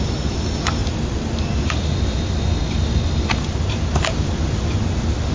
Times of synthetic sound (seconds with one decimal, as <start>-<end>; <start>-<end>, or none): none